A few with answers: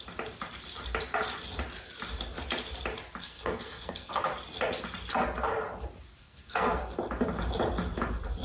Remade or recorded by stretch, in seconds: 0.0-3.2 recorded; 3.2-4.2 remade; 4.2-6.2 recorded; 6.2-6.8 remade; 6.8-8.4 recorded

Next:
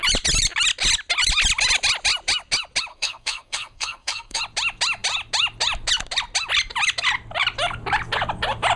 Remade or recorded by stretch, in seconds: 0.0-2.9 recorded; 2.9-4.4 remade; 4.4-8.8 recorded

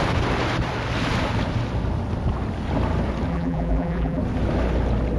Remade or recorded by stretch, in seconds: 0.0-3.3 recorded; 3.3-4.2 remade; 4.2-5.2 recorded

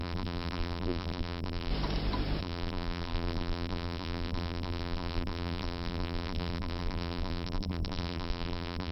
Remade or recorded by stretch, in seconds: 0.0-1.7 remade; 1.7-2.4 recorded; 2.4-8.9 remade